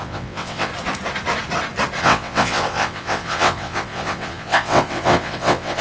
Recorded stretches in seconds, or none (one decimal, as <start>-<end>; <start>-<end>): 0.7-2.0